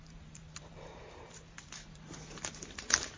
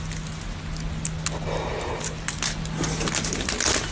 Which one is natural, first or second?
second